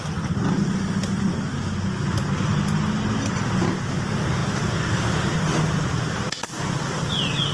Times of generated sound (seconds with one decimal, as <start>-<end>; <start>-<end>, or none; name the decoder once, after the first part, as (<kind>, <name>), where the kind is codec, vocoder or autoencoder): none